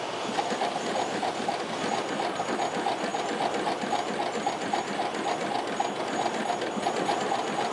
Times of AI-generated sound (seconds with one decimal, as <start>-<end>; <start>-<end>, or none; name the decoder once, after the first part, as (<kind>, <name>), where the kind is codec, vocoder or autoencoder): none